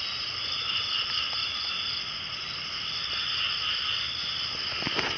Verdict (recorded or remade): recorded